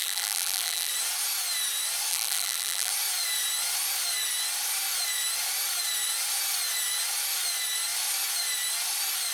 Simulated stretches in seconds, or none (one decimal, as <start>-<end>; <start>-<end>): 0.0-0.9; 2.1-2.9